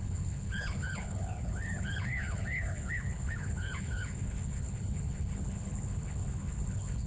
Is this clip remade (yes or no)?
yes